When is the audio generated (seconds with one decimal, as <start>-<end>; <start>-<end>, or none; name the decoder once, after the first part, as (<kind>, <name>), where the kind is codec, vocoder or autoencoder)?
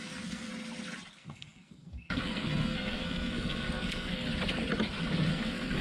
0.0-0.5 (codec, SNAC); 1.1-4.3; 5.3-5.8